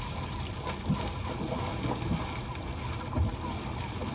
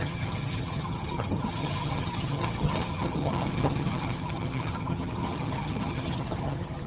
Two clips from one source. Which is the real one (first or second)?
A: first